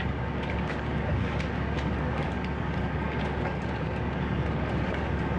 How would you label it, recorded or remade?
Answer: remade